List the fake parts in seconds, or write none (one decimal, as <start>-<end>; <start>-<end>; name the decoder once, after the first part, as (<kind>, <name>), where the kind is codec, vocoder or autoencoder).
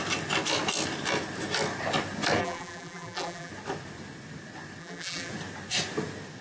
2.4-3.5 (vocoder, BigVGAN v2); 4.8-5.3